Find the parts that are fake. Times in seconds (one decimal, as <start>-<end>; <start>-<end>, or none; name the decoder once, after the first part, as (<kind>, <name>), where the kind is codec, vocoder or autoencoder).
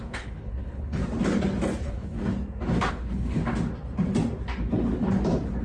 0.0-1.0 (codec, HILCodec); 1.8-2.2; 2.9-3.4